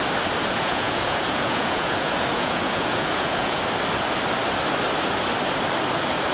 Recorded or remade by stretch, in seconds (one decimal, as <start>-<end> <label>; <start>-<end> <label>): 0.0-0.4 recorded; 0.4-3.6 remade; 3.6-6.3 recorded